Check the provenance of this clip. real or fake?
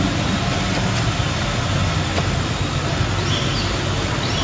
real